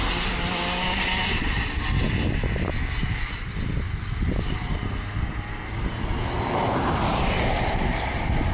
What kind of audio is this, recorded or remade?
recorded